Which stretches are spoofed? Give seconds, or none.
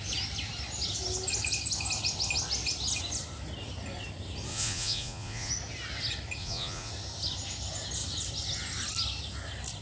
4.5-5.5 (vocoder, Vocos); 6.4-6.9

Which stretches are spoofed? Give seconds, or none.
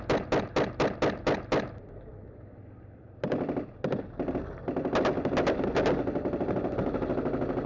none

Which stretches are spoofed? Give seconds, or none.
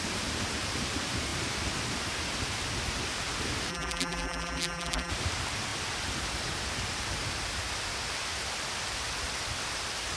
3.7-5.1 (vocoder, BigVGAN v2)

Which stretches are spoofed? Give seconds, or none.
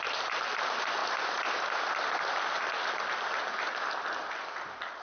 0.0-5.0 (vocoder, BigVGAN v2)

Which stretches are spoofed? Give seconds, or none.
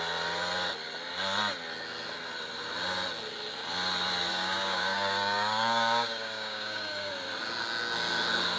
4.3-7.1 (codec, DAC)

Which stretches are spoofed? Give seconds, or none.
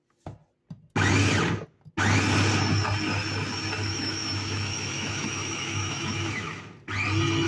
3.8-6.6 (autoencoder, DAC-VAE)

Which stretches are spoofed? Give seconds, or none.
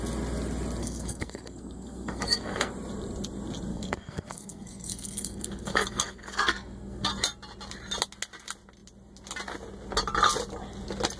0.8-2.7 (codec, SNAC); 3.7-7.1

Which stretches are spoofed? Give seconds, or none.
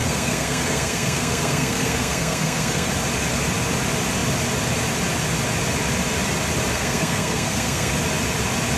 0.0-2.9 (codec, SNAC); 6.7-7.9